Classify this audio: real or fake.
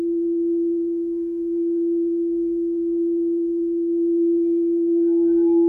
fake